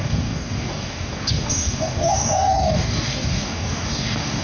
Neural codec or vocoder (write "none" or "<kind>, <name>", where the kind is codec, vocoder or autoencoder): codec, DAC